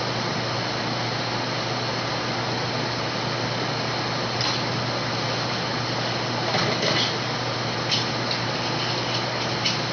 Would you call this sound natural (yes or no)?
yes